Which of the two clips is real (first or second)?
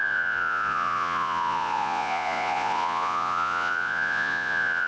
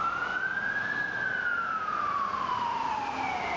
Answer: second